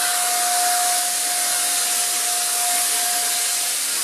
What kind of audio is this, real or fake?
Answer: real